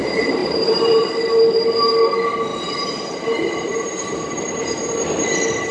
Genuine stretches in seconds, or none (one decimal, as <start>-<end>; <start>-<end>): 0.0-0.4; 1.1-2.5; 4.9-5.7